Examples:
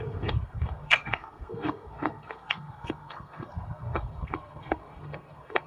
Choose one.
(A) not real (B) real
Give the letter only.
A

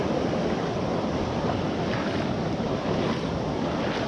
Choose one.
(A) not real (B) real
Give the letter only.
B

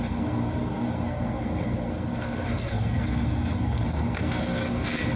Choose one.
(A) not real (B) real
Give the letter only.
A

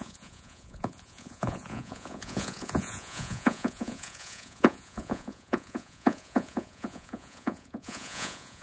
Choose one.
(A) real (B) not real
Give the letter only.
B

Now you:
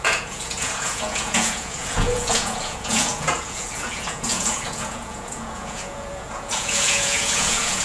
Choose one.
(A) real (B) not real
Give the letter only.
B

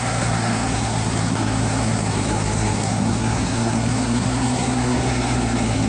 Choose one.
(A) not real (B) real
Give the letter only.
A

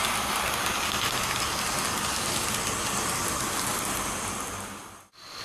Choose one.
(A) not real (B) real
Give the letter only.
B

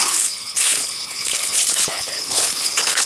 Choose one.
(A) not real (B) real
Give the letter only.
A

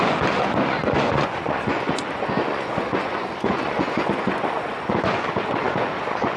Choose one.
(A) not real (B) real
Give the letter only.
A